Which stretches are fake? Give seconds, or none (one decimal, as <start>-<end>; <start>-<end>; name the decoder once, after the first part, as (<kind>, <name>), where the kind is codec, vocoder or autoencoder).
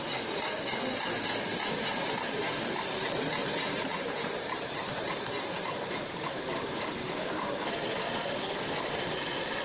1.5-3.2 (vocoder, BigVGAN v2); 3.9-7.2